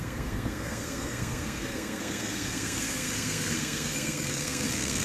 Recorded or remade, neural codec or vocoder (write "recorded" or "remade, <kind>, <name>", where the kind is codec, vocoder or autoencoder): remade, codec, SNAC